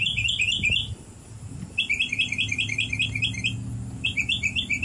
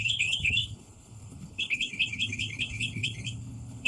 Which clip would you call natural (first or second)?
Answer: first